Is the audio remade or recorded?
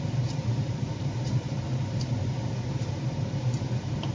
remade